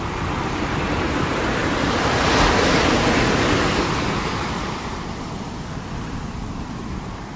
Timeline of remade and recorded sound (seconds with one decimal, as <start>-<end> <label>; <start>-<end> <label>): 0.0-1.6 remade; 1.6-6.0 recorded; 6.0-7.4 remade